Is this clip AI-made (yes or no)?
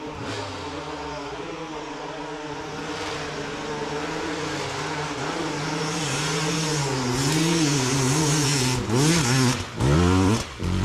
no